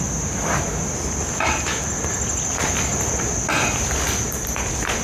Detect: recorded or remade recorded